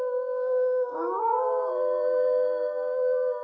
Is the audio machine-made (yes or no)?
yes